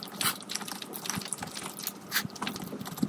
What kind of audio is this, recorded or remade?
recorded